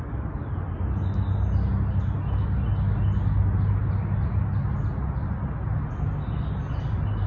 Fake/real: real